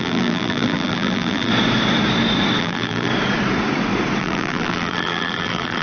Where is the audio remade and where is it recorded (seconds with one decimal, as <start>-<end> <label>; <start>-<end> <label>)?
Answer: 0.0-1.5 remade; 1.5-2.6 recorded; 2.6-3.1 remade; 3.1-4.2 recorded; 4.2-5.8 remade